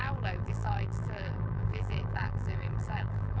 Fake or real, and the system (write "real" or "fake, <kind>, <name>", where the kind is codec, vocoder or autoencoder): fake, vocoder, BigVGAN v2